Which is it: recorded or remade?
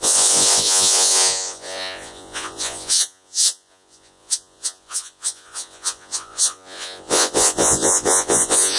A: remade